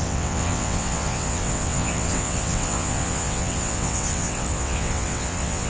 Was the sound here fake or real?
fake